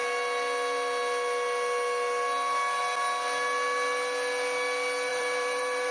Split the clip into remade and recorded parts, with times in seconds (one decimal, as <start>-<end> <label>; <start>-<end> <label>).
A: 0.0-5.1 recorded; 5.1-5.9 remade